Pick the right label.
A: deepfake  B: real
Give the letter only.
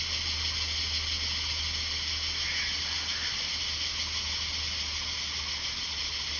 B